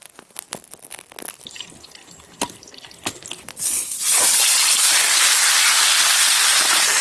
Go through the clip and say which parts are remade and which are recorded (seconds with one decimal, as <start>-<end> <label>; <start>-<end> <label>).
0.0-7.0 recorded